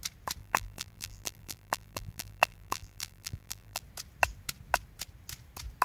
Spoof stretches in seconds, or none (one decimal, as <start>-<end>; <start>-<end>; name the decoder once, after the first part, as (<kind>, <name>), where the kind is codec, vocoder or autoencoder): 0.4-3.8 (vocoder, BigVGAN v2)